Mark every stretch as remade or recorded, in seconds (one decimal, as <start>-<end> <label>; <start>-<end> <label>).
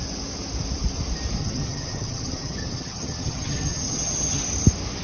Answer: 0.0-1.4 recorded; 1.4-4.4 remade; 4.4-5.0 recorded